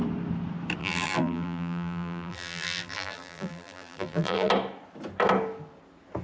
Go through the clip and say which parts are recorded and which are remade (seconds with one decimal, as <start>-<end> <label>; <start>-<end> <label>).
0.0-0.8 recorded; 0.8-4.5 remade; 4.5-6.2 recorded

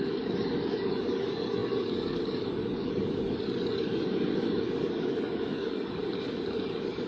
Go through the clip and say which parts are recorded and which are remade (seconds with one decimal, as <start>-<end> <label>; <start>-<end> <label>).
0.0-7.1 remade

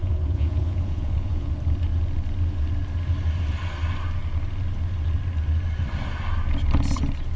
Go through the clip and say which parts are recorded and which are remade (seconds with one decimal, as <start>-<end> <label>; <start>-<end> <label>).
0.0-1.5 remade; 1.5-7.4 recorded

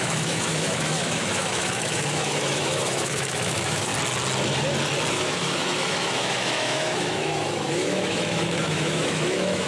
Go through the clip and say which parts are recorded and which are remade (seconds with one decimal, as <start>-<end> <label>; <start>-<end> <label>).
0.0-3.9 remade; 3.9-5.1 recorded; 5.1-9.7 remade

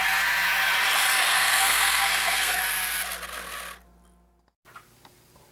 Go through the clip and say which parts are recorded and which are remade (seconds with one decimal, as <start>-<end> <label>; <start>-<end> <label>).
0.0-1.3 recorded; 1.3-2.6 remade; 2.6-5.5 recorded

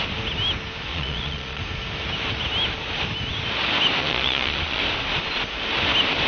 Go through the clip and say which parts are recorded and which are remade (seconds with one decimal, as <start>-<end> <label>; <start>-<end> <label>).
0.0-0.9 recorded; 0.9-1.6 remade; 1.6-4.0 recorded; 4.0-4.8 remade; 4.8-6.3 recorded

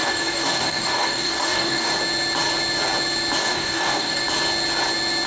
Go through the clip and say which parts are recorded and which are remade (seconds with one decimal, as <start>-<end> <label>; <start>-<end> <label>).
0.0-1.9 remade; 1.9-3.4 recorded; 3.4-4.2 remade; 4.2-5.3 recorded